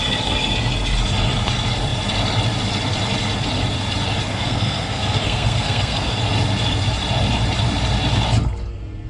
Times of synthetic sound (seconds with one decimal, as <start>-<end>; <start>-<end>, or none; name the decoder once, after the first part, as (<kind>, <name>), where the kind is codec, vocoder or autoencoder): 4.3-6.2 (codec, SNAC)